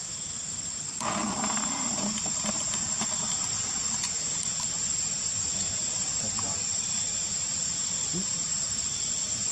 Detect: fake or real fake